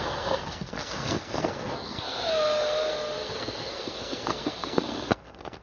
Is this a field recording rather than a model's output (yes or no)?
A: no